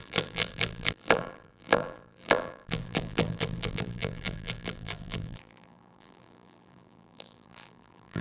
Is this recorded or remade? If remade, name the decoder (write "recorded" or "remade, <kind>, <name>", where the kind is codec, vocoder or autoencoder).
remade, vocoder, BigVGAN v2